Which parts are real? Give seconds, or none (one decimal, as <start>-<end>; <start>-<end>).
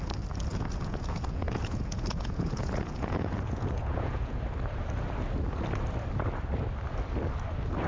0.0-0.5; 4.4-7.9